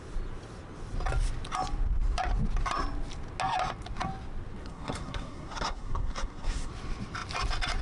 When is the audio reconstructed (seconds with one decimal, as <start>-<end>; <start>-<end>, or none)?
4.6-6.7